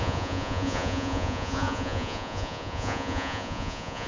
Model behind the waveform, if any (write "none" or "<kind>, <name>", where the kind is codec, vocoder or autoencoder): vocoder, Vocos